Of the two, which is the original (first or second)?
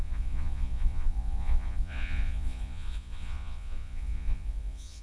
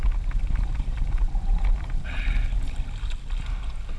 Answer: second